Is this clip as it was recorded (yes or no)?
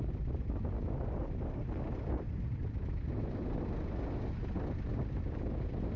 yes